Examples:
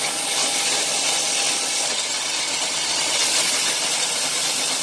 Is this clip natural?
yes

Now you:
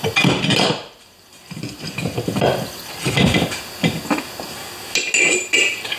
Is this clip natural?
yes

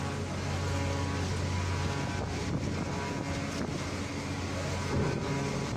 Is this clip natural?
yes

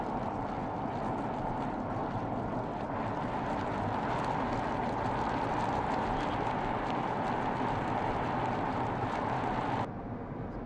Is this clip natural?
yes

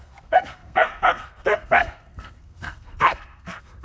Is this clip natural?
no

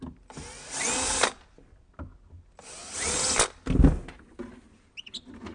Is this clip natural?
yes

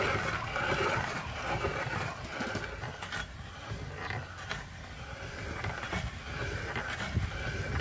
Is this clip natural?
yes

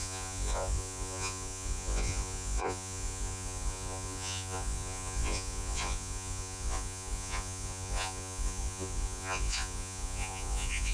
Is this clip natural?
no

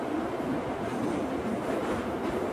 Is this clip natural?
yes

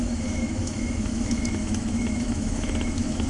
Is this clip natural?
no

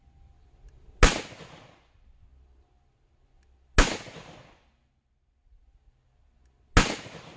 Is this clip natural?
yes